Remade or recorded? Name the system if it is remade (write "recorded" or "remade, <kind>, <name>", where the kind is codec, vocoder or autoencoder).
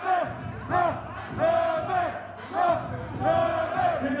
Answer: recorded